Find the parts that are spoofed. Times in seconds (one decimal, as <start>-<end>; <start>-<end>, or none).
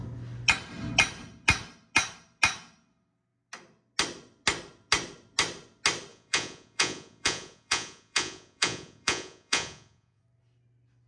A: 6.1-10.2